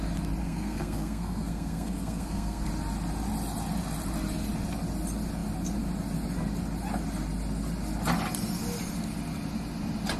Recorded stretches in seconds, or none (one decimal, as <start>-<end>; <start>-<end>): 0.0-0.4; 2.7-10.2